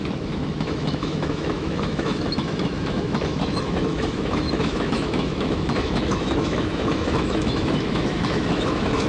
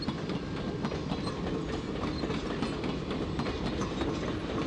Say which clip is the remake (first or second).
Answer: first